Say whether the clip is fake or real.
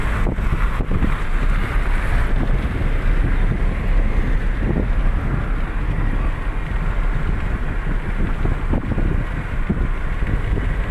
real